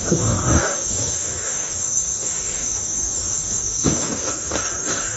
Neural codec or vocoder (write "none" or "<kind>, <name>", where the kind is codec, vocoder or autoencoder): codec, DAC